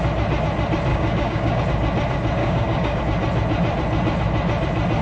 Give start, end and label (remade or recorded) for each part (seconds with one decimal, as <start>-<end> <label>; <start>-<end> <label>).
0.0-0.9 recorded; 0.9-1.6 remade; 1.6-2.4 recorded; 2.4-3.0 remade; 3.0-5.0 recorded